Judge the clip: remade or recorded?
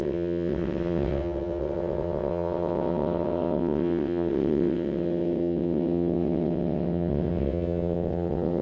remade